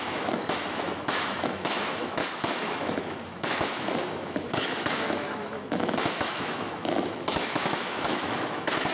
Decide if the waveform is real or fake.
fake